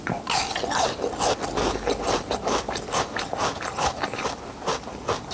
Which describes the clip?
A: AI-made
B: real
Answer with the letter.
B